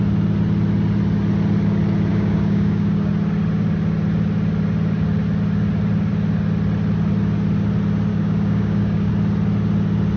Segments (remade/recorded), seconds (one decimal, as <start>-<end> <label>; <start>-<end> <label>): 0.0-2.1 recorded; 2.1-3.1 remade; 3.1-8.1 recorded; 8.1-9.1 remade; 9.1-10.2 recorded